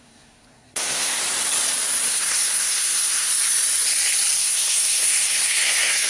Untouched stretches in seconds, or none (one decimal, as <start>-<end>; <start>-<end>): 1.2-2.1; 3.3-4.4